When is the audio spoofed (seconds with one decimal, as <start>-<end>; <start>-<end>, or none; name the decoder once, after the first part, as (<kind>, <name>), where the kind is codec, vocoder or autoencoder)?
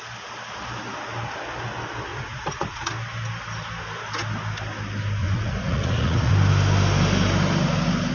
2.1-2.9 (vocoder, Vocos); 5.2-6.3